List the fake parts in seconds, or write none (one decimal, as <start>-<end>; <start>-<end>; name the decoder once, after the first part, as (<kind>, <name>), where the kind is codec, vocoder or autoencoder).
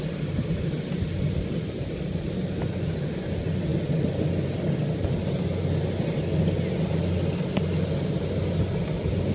none